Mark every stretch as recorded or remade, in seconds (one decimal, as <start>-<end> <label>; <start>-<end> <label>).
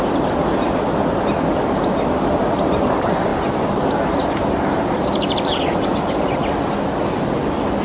0.0-7.8 recorded